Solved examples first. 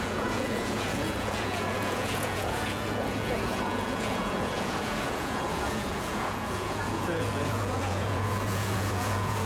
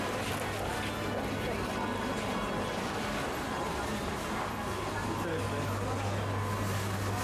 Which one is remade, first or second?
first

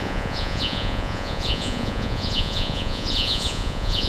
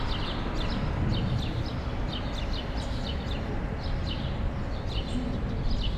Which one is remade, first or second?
first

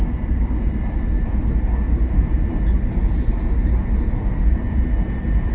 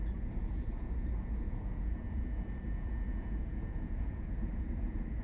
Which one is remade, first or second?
second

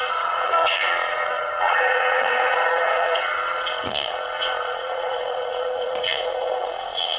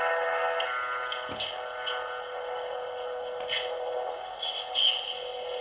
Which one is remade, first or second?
first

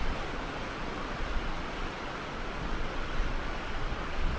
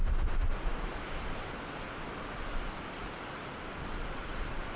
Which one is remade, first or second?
first